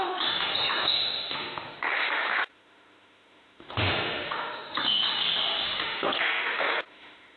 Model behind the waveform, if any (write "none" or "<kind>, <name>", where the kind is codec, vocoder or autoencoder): autoencoder, DAC-VAE